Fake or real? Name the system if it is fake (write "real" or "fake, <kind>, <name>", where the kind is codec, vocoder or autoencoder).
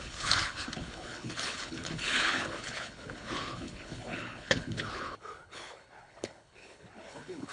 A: fake, codec, HILCodec